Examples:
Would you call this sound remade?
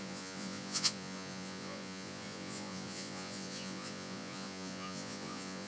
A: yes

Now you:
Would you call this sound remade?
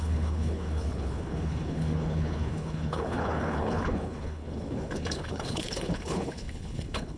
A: yes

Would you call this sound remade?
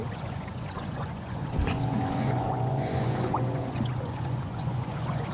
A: yes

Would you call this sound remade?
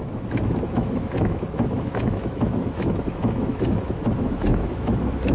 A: yes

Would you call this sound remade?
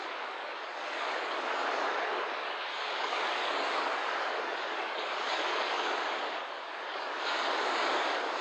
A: yes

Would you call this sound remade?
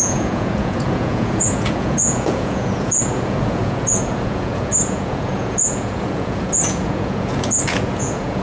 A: yes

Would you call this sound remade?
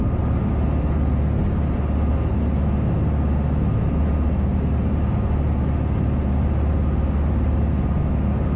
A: no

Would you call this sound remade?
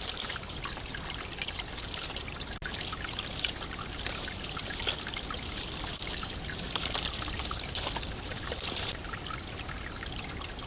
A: no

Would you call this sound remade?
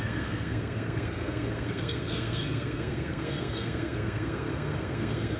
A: yes